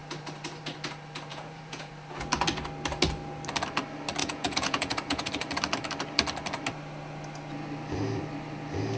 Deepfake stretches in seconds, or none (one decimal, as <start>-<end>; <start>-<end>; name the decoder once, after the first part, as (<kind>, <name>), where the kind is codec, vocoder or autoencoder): 1.3-1.9 (vocoder, Vocos); 4.2-5.3